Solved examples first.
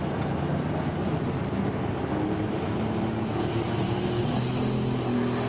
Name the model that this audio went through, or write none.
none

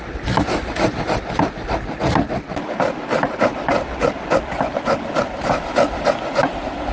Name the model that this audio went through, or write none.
vocoder, BigVGAN v2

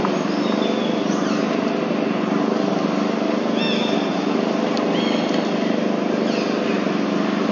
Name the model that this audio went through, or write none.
none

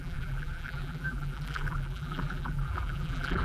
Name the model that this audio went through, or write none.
vocoder, BigVGAN v2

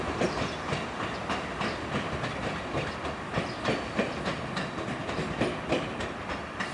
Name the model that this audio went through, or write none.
none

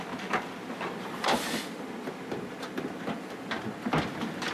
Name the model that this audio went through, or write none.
none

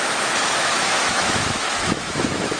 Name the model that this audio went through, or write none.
autoencoder, DAC-VAE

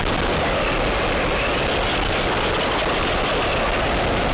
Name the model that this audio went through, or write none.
none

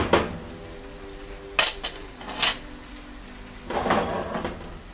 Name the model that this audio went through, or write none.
none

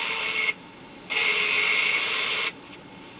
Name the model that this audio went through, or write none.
none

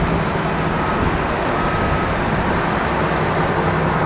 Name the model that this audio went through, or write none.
none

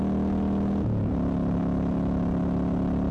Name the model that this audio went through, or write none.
none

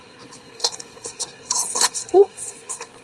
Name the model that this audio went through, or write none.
codec, SNAC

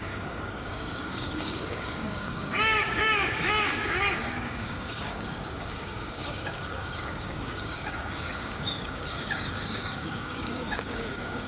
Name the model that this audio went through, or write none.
codec, DAC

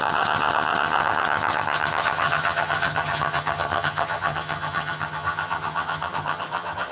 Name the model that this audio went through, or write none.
vocoder, HiFi-GAN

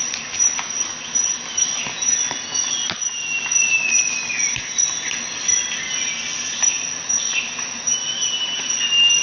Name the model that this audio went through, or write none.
none